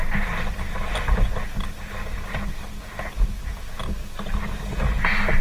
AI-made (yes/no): no